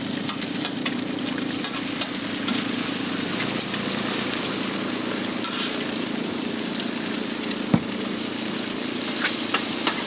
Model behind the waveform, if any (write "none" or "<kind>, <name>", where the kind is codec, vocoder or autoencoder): none